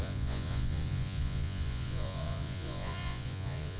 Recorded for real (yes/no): no